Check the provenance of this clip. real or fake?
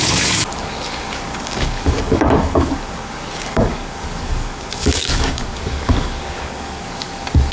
fake